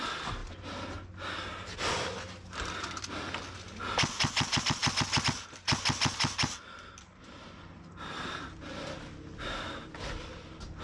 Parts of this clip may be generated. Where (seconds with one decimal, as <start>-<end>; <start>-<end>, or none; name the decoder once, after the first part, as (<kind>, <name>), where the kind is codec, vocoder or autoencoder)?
none